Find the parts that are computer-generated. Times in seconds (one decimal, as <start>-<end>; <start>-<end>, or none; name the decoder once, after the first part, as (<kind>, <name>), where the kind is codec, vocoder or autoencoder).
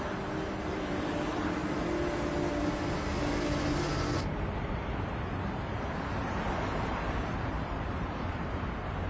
6.7-8.5 (vocoder, BigVGAN v2)